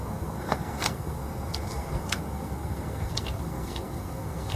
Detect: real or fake fake